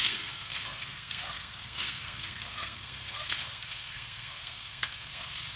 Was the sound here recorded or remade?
remade